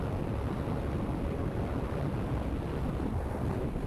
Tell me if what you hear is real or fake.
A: real